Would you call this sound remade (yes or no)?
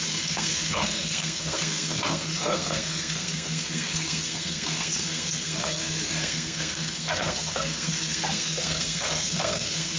yes